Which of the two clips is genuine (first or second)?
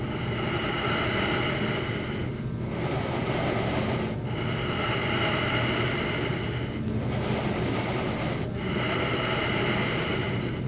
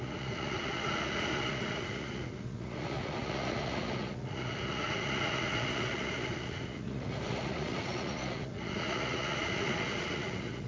first